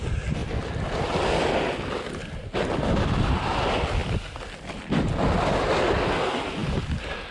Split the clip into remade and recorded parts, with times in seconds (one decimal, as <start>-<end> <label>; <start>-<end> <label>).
0.0-0.4 recorded; 0.4-2.1 remade; 2.1-6.6 recorded; 6.6-7.3 remade